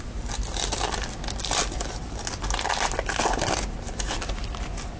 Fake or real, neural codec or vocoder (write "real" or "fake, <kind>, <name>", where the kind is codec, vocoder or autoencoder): real